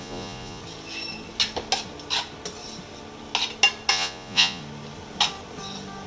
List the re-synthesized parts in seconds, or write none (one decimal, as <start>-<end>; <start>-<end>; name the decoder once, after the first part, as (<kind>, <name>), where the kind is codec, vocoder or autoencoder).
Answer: 0.0-0.6 (vocoder, Vocos); 3.9-4.6